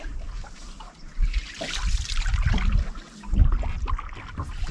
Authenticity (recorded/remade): recorded